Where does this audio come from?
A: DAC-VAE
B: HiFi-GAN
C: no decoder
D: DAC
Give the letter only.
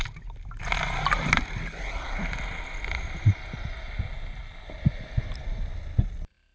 C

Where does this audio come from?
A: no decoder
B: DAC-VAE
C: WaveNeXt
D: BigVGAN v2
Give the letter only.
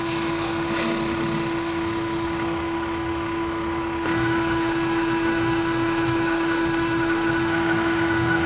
B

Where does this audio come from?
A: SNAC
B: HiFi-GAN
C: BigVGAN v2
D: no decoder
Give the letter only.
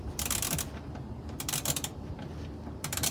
C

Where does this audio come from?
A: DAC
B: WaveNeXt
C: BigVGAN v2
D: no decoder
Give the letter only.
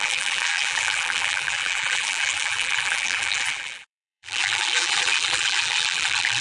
C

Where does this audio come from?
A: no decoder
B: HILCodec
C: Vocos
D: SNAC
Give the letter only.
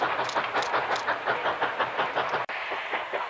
A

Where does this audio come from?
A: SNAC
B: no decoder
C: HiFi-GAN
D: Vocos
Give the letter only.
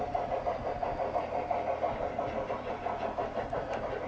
B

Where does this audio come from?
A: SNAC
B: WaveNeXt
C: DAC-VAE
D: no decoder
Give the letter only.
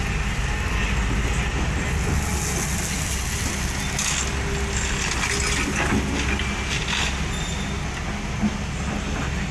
D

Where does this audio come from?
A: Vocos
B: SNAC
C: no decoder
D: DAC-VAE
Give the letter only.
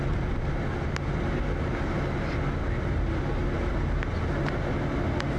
C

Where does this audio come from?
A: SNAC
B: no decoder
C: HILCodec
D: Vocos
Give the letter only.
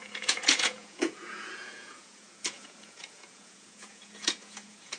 D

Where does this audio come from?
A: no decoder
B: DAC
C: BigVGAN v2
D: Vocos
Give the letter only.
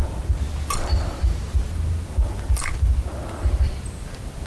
A